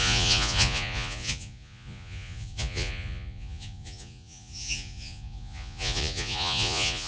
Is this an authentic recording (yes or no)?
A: no